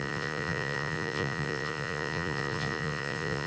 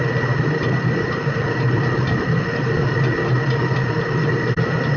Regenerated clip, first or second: first